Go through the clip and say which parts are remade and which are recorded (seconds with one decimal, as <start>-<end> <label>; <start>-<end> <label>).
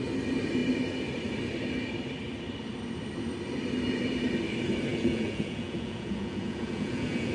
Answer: 0.0-4.9 recorded; 4.9-7.3 remade